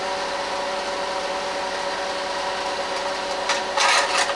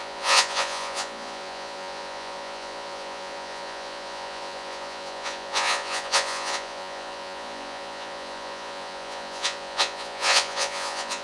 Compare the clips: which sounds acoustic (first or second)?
first